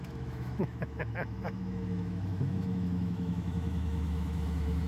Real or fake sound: fake